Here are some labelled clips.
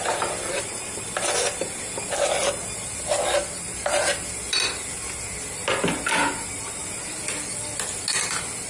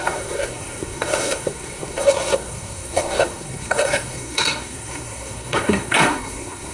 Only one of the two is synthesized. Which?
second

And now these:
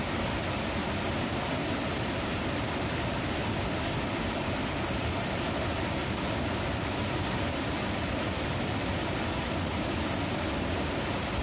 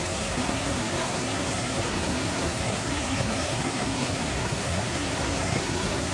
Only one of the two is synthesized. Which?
second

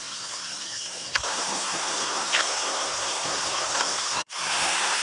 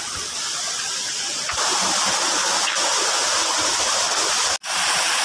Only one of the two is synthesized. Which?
first